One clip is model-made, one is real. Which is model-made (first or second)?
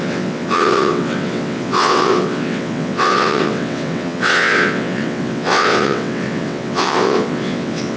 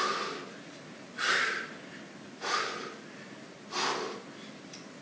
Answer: first